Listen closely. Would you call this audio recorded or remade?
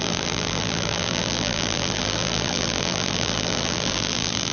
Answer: remade